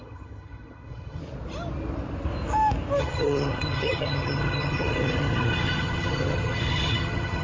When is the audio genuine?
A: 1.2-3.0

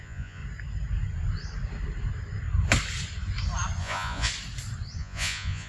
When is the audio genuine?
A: 0.4-3.8; 4.3-5.0

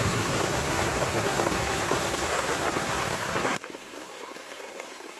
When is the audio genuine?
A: none

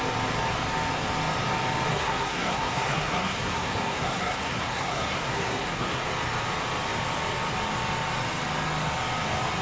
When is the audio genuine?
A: 0.0-1.9; 6.0-9.6

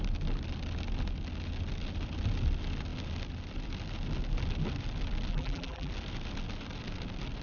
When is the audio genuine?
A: 0.0-5.3; 5.9-7.4

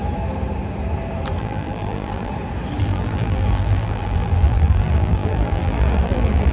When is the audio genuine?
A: 0.0-1.4; 2.3-2.8

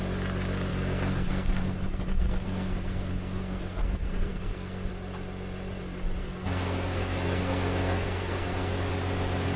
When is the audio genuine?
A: 0.0-0.7; 4.9-6.2; 8.9-9.6

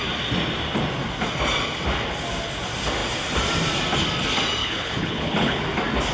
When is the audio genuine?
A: 0.0-4.6; 5.6-6.1